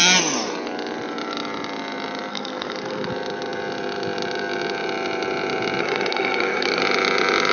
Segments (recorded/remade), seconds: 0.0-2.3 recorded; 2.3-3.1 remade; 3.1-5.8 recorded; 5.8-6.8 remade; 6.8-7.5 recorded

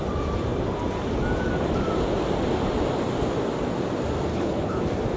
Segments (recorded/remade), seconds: 0.0-4.3 recorded; 4.3-4.8 remade; 4.8-5.2 recorded

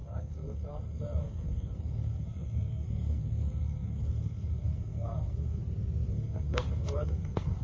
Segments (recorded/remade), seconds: 0.0-5.6 remade; 5.6-6.1 recorded; 6.1-7.6 remade

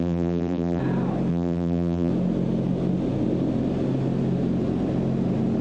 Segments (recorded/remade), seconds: 0.0-0.8 remade; 0.8-1.3 recorded; 1.3-2.1 remade; 2.1-5.6 recorded

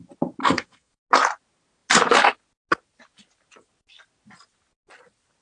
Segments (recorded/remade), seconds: 0.0-0.4 recorded; 0.4-0.9 remade; 0.9-5.4 recorded

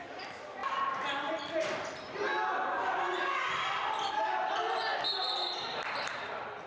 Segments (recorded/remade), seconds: 0.0-6.7 recorded

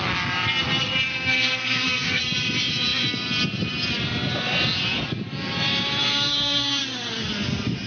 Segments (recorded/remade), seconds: 0.0-1.1 recorded; 1.1-2.2 remade; 2.2-6.0 recorded; 6.0-6.8 remade; 6.8-7.9 recorded